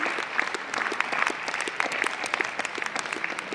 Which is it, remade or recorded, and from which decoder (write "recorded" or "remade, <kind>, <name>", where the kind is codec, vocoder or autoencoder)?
recorded